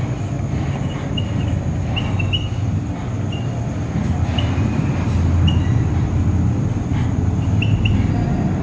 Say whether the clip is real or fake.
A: real